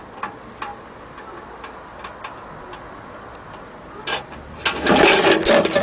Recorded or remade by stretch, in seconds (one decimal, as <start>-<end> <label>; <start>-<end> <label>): 0.0-3.3 recorded; 3.3-4.6 remade; 4.6-5.8 recorded

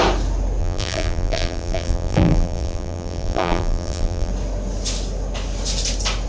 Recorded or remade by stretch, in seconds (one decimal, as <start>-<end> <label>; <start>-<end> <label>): 0.0-0.6 recorded; 0.6-4.3 remade; 4.3-6.3 recorded

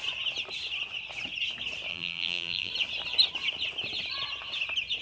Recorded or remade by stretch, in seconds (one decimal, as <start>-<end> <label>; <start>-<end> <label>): 0.0-1.9 recorded; 1.9-2.7 remade; 2.7-5.0 recorded

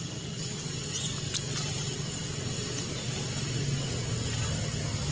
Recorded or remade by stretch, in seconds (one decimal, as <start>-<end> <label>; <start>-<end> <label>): 0.0-5.1 recorded

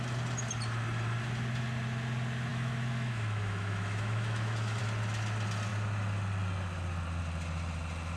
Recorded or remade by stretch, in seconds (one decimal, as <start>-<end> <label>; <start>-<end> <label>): 0.0-2.5 recorded; 2.5-4.8 remade; 4.8-8.2 recorded